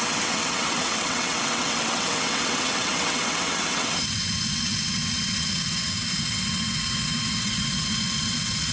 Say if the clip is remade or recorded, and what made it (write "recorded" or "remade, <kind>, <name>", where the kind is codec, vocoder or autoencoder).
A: remade, vocoder, WaveNeXt